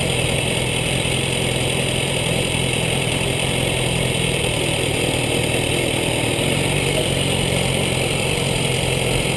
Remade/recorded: remade